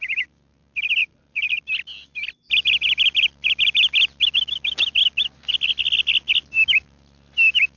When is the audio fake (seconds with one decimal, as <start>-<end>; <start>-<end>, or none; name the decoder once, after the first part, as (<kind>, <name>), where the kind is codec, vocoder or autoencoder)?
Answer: 1.0-1.6 (vocoder, BigVGAN v2)

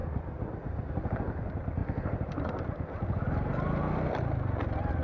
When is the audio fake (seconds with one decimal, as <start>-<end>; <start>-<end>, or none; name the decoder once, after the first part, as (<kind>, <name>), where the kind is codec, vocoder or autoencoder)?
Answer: 0.0-0.9 (vocoder, BigVGAN v2)

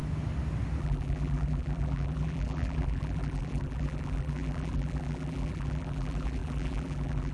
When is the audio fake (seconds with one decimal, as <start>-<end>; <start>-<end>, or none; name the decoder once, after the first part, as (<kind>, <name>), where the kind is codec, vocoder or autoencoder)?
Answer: 0.8-7.3 (vocoder, BigVGAN v2)

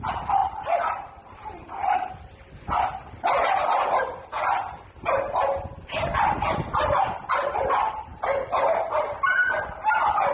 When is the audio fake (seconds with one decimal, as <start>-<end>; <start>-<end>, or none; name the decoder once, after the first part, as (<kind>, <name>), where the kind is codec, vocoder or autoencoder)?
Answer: 0.4-2.1 (vocoder, BigVGAN v2); 8.1-8.6

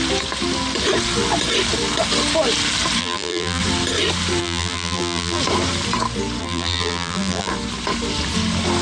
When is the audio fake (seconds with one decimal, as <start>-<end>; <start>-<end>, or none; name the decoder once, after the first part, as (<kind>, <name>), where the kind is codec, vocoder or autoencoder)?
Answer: 3.0-3.6 (vocoder, BigVGAN v2); 4.4-5.4; 6.4-7.5